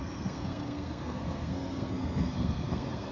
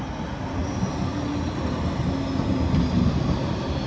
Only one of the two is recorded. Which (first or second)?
second